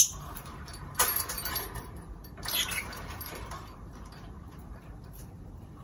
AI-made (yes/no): yes